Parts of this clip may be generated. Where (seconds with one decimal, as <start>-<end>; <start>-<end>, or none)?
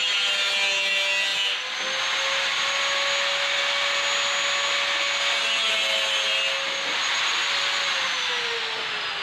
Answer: none